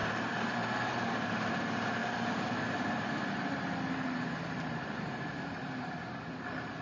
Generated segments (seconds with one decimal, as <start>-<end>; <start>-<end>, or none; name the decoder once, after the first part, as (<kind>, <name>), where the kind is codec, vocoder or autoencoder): 0.0-1.5 (vocoder, BigVGAN v2); 2.0-5.9